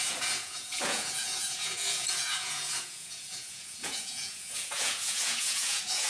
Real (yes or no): no